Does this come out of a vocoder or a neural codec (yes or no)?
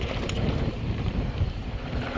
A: yes